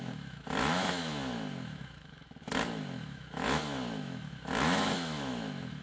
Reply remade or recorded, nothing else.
remade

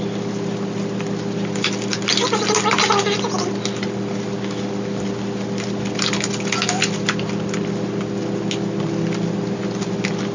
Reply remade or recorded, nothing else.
recorded